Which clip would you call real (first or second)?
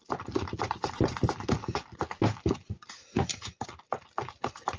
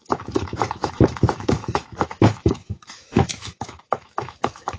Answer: first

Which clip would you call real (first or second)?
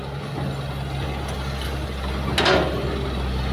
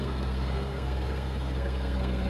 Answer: first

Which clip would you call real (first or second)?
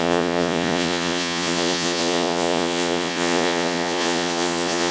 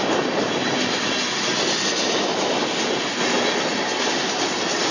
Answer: second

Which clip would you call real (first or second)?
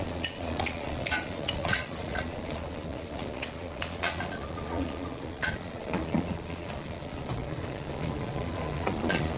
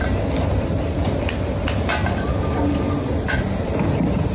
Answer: second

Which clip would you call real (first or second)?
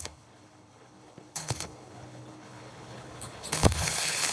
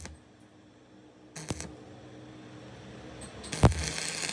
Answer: second